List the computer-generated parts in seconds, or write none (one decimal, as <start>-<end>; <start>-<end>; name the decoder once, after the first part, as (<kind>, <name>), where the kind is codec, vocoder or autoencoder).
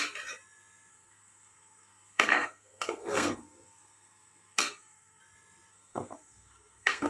0.9-5.2 (codec, SNAC); 5.7-7.1